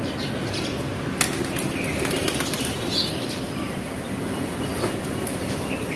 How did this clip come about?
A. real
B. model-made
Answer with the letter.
A